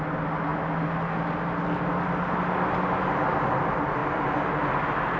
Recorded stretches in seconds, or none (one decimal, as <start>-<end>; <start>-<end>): 0.0-5.2